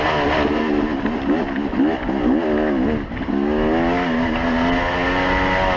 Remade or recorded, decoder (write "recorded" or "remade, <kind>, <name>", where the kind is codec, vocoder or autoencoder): recorded